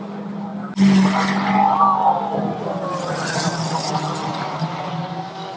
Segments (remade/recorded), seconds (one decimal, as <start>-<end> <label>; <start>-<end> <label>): 0.0-5.6 recorded